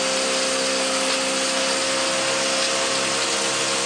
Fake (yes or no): no